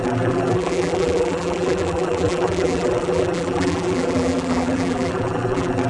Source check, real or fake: fake